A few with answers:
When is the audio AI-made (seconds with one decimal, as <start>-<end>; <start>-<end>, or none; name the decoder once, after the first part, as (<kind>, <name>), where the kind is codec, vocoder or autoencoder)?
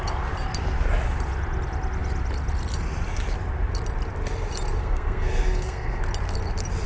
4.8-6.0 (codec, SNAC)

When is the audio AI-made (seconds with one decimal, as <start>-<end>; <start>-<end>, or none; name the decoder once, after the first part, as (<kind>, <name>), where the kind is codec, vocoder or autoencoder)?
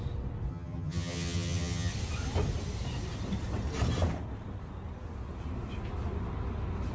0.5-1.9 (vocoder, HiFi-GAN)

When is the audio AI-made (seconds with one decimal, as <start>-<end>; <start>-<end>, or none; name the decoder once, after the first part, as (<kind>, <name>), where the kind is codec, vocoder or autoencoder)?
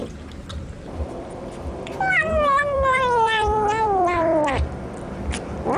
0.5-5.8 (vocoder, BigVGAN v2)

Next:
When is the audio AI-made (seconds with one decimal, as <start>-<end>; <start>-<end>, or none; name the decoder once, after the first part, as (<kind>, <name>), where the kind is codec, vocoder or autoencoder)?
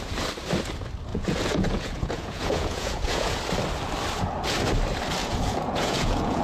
1.1-3.4 (vocoder, Vocos); 5.2-6.4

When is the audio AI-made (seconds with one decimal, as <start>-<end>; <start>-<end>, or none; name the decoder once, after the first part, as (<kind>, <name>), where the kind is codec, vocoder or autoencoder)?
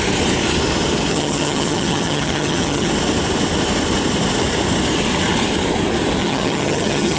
1.1-2.9 (vocoder, HiFi-GAN); 6.2-7.2